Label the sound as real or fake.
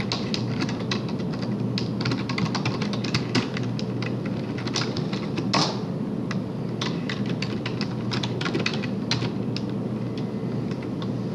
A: real